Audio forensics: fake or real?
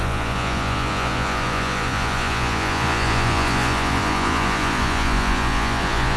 fake